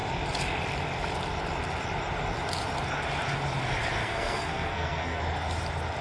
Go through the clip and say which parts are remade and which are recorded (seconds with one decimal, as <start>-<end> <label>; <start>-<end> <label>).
0.0-4.0 recorded; 4.0-5.2 remade; 5.2-6.0 recorded